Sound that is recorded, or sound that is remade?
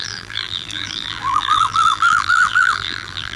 remade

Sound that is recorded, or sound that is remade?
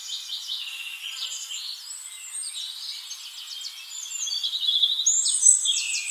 recorded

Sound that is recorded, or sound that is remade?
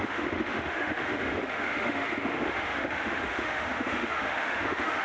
remade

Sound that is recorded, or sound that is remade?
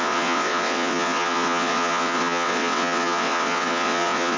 remade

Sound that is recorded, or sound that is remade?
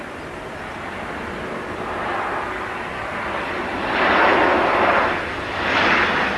recorded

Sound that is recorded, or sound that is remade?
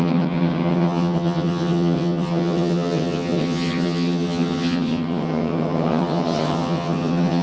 remade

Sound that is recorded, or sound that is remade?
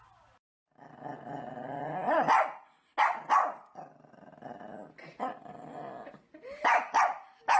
recorded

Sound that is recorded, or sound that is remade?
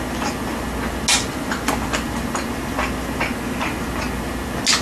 recorded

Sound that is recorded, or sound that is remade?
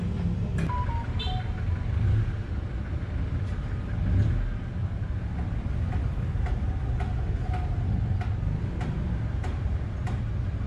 recorded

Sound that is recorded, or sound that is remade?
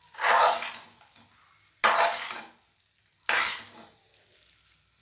recorded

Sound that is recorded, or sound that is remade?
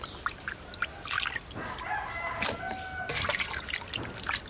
recorded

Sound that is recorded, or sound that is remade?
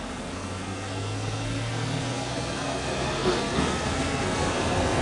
remade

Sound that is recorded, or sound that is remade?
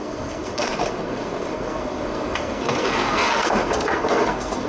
remade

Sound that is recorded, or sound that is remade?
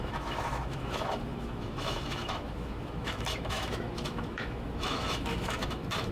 remade